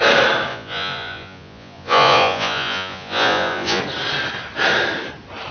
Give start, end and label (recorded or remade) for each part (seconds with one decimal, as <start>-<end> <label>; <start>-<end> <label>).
0.0-0.5 recorded; 0.5-3.8 remade; 3.8-5.5 recorded